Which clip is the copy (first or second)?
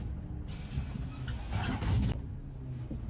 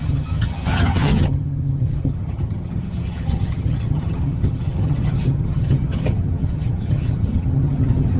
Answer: second